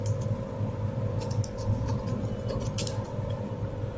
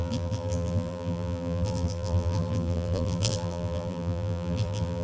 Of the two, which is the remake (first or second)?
second